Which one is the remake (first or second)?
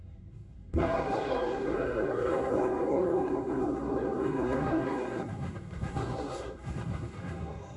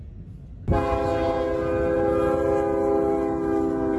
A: first